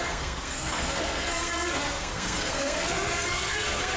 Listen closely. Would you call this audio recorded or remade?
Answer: remade